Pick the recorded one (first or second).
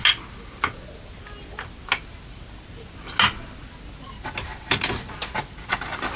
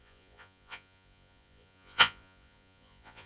first